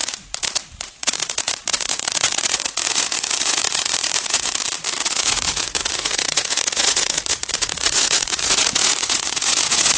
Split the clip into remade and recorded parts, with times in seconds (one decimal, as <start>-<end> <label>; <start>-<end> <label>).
0.0-4.6 remade; 4.6-5.0 recorded; 5.0-10.0 remade